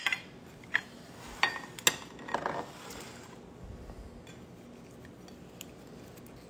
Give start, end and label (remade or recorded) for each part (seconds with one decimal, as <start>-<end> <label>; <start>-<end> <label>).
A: 0.0-6.5 recorded